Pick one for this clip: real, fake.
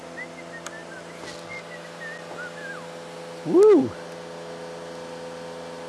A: real